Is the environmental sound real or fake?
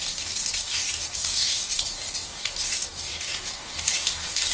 fake